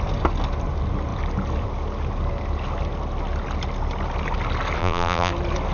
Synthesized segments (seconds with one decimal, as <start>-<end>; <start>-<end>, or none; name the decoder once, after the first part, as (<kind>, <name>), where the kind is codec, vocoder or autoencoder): 4.8-5.3 (vocoder, BigVGAN v2)